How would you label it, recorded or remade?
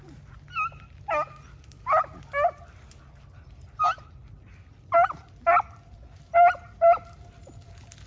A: recorded